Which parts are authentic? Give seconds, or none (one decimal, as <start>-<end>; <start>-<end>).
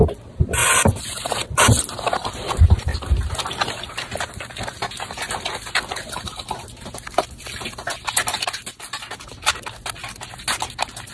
0.0-0.6; 1.3-2.9; 3.4-11.1